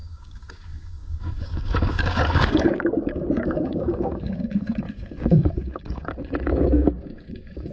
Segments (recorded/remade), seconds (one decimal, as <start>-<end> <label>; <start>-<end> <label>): 0.0-7.7 remade